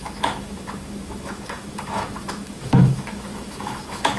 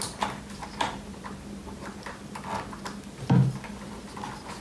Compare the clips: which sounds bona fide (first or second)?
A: second